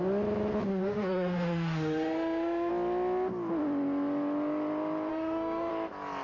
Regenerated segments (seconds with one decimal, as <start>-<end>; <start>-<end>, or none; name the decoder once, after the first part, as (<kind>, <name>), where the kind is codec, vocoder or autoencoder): 0.7-2.7 (autoencoder, DAC-VAE); 5.1-5.7